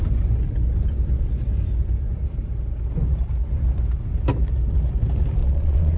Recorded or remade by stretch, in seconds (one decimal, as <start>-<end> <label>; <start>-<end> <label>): 0.0-5.4 recorded; 5.4-6.0 remade